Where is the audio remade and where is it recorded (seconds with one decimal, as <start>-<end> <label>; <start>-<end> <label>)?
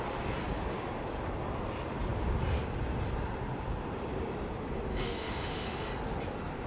0.0-4.9 recorded; 4.9-5.9 remade; 5.9-6.7 recorded